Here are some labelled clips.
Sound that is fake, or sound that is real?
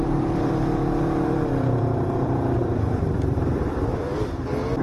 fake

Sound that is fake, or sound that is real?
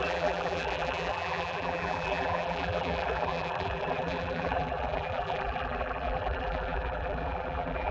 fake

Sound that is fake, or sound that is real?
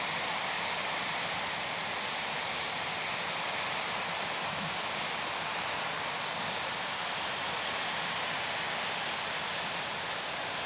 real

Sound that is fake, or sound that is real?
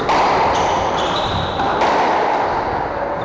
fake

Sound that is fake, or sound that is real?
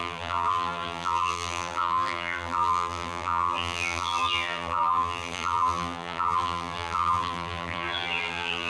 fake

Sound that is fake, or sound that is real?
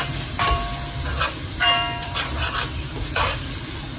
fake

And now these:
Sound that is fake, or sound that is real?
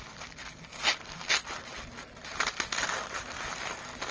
real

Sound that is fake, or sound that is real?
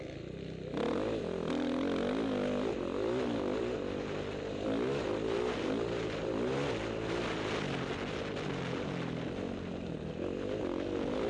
real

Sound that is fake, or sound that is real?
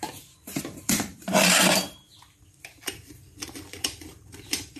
fake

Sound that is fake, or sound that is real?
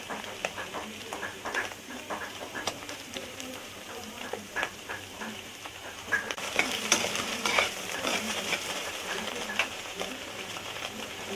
fake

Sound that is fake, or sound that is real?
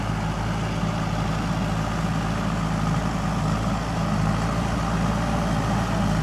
fake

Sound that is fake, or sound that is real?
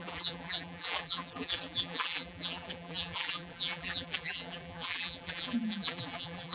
fake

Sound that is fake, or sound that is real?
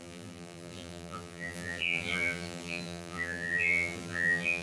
fake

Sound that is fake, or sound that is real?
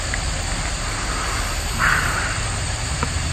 real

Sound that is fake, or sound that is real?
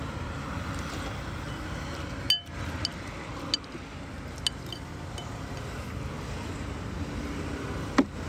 real